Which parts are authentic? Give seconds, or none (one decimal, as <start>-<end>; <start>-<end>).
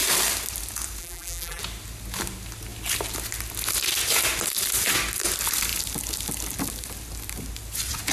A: 0.0-1.0; 1.6-8.1